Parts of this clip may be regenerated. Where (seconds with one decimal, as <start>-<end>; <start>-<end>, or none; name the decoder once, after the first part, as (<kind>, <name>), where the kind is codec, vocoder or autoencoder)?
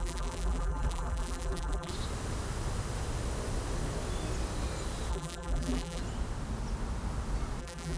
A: 0.0-1.9 (vocoder, BigVGAN v2); 5.1-6.0; 7.6-8.0